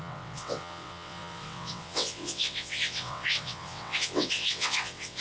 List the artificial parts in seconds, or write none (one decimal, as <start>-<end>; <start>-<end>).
0.0-5.2